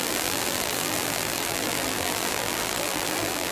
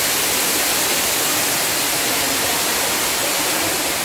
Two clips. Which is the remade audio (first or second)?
first